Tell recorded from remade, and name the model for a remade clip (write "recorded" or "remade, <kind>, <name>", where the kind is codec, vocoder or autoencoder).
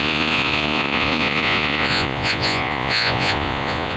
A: remade, vocoder, Vocos